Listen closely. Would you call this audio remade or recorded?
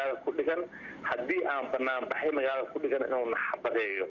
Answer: recorded